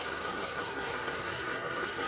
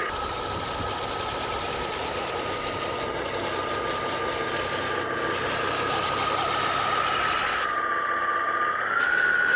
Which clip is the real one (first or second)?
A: second